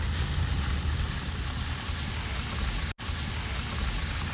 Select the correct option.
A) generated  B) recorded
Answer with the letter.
B